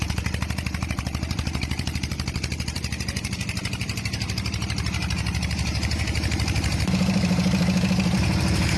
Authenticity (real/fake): fake